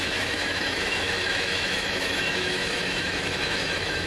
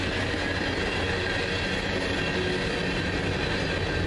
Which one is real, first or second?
second